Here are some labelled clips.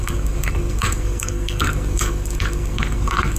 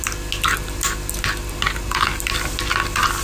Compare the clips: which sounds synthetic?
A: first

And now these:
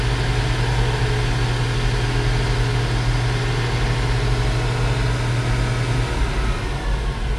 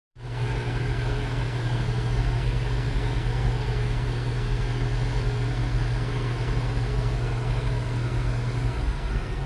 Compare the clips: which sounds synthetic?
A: second